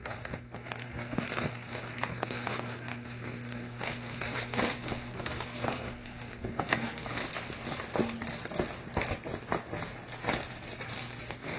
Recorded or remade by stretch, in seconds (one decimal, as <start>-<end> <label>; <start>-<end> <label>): 0.0-7.2 remade; 7.2-11.2 recorded; 11.2-11.6 remade